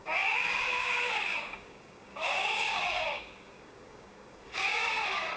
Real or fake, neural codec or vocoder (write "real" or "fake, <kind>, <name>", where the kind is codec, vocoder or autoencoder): fake, codec, DAC